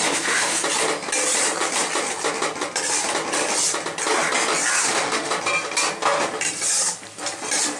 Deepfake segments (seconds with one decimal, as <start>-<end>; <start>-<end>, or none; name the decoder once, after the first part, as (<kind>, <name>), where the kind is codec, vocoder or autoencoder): 0.0-0.6 (autoencoder, DAC-VAE); 4.8-5.3